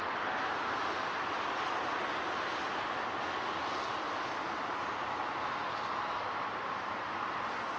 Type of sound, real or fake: real